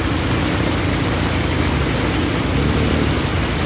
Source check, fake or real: real